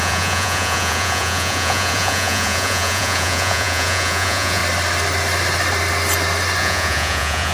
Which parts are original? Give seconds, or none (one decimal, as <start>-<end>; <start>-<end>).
4.6-6.6